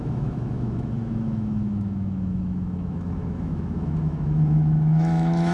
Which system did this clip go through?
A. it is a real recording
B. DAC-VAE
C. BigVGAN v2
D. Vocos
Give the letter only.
B